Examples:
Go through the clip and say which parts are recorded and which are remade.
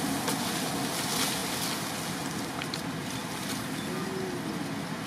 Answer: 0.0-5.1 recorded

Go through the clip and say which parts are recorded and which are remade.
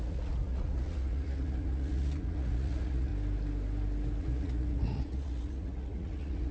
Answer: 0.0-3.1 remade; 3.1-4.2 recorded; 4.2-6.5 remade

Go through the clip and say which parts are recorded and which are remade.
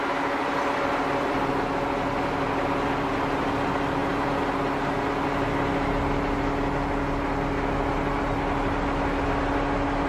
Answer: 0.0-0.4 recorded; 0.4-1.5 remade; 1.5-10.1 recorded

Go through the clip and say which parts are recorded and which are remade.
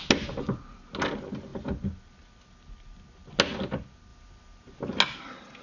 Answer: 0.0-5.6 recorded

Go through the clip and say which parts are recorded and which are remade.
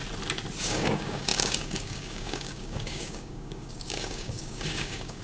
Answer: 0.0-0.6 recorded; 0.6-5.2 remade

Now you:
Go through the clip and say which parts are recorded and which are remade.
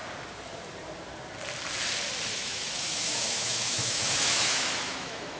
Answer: 0.0-2.3 recorded; 2.3-5.4 remade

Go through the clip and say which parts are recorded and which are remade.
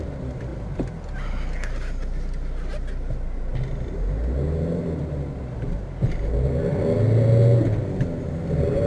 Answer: 0.0-8.9 recorded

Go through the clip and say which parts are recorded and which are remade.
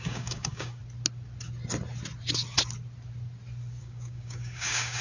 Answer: 0.0-0.8 remade; 0.8-3.8 recorded; 3.8-5.0 remade